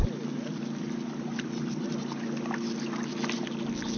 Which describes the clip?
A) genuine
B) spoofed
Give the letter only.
A